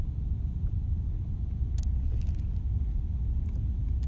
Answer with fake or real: real